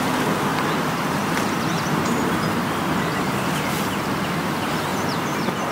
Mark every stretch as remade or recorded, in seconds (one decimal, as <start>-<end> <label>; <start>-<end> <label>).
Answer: 0.0-0.5 recorded; 0.5-3.2 remade; 3.2-4.9 recorded; 4.9-5.7 remade